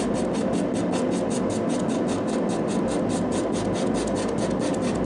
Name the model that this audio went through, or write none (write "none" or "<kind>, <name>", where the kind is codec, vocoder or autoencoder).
none